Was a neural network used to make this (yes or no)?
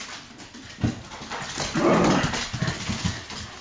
no